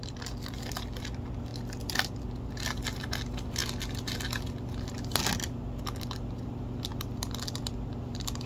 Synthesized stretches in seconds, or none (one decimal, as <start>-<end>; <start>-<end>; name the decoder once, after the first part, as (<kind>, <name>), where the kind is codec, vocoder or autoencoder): none